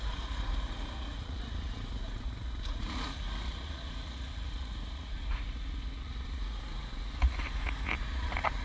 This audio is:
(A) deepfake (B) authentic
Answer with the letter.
A